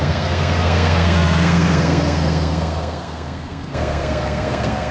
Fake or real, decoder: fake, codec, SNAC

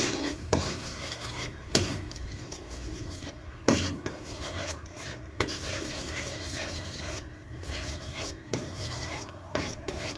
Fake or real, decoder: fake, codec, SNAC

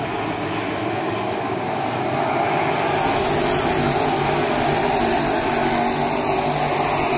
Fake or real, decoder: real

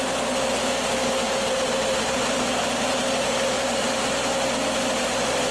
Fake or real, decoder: real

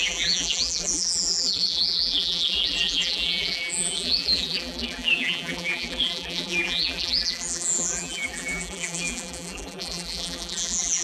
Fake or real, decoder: fake, vocoder, BigVGAN v2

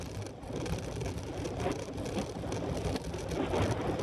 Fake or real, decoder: real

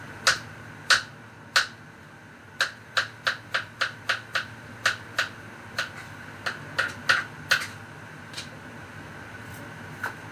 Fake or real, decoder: real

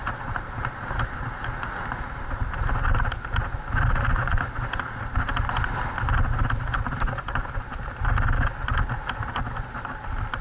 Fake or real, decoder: real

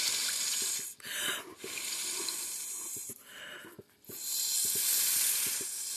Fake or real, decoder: real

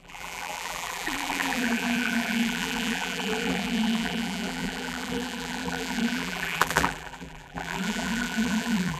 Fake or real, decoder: fake, vocoder, BigVGAN v2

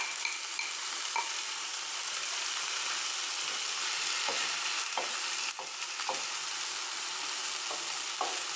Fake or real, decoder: real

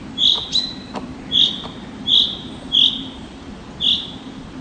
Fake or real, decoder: fake, vocoder, BigVGAN v2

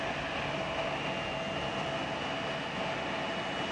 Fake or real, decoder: real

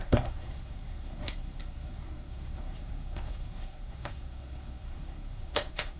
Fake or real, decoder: fake, codec, SNAC